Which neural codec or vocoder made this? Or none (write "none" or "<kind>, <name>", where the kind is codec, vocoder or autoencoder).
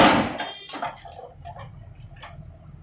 none